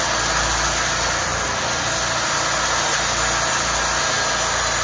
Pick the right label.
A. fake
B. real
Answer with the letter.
B